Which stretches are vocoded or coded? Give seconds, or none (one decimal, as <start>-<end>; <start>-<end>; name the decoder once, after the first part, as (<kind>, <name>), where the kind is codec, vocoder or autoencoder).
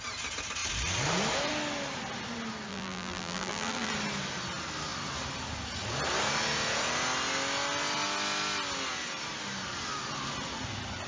2.7-3.9 (vocoder, BigVGAN v2)